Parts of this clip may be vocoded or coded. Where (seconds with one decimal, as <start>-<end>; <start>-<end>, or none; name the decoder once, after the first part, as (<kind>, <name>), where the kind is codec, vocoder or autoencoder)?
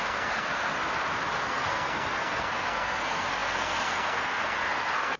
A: 0.0-0.8 (codec, SNAC); 1.4-5.2